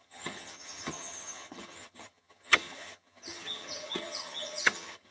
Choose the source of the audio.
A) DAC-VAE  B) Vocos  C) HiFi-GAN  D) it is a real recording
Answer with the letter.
C